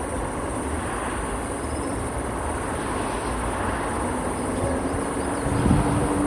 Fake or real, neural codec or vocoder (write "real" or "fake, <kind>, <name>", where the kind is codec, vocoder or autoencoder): real